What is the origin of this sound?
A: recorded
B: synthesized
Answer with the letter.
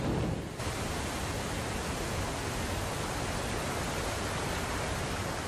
A